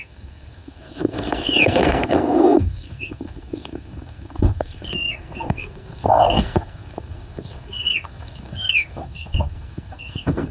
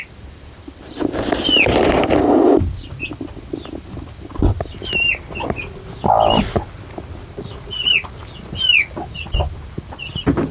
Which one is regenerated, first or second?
first